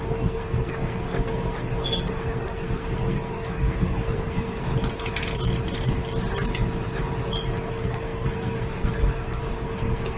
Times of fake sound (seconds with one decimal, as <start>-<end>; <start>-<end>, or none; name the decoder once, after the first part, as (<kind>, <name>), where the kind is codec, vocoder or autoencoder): 0.0-4.7 (codec, SNAC); 7.6-10.2